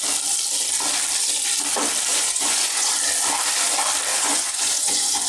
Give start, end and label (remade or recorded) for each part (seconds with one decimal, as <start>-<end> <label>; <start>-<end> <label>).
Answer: 0.0-2.1 recorded; 2.1-2.9 remade; 2.9-4.1 recorded; 4.1-5.3 remade